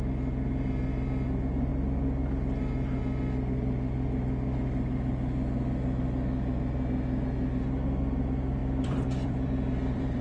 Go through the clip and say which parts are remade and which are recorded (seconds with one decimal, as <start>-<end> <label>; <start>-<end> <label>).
0.0-8.6 recorded; 8.6-10.2 remade